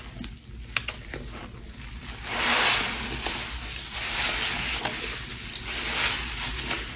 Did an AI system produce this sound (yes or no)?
no